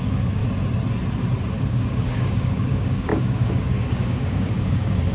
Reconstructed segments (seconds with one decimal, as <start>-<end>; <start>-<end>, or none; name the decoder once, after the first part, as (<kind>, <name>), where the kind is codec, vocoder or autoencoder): 0.0-0.4 (codec, DAC); 1.6-5.1